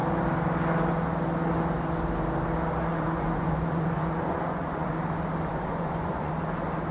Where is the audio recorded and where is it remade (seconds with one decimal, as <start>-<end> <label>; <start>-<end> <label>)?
0.0-2.9 recorded; 2.9-4.9 remade; 4.9-5.5 recorded; 5.5-6.3 remade; 6.3-6.9 recorded